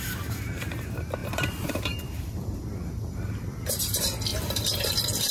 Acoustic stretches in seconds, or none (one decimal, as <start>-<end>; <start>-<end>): 0.0-1.2; 3.7-4.3